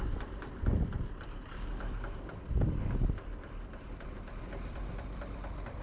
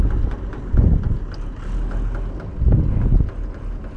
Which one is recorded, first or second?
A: second